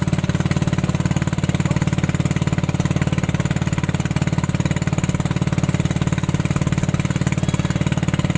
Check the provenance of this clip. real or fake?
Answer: real